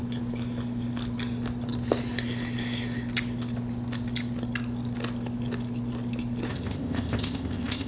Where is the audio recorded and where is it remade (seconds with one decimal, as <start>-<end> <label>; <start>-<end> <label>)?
0.0-6.5 recorded; 6.5-7.9 remade